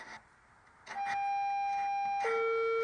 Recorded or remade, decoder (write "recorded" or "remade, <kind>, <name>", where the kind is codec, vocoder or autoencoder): recorded